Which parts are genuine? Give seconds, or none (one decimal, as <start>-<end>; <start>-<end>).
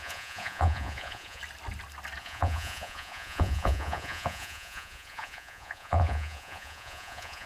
1.4-2.2